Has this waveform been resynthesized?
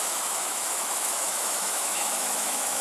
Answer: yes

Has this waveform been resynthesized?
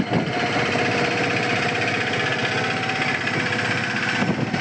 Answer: no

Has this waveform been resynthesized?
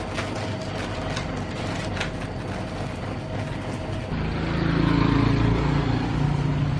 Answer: no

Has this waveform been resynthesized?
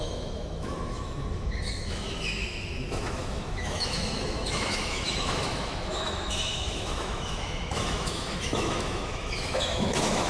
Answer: yes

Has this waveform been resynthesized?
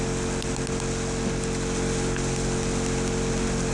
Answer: no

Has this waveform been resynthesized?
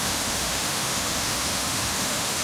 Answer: yes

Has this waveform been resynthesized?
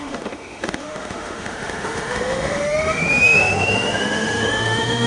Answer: yes